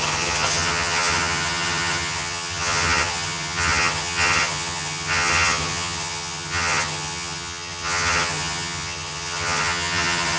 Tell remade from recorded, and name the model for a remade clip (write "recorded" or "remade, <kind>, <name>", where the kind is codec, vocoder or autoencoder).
remade, vocoder, HiFi-GAN